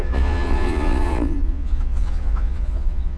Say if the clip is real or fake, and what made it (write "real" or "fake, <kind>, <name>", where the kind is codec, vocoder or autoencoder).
fake, vocoder, Vocos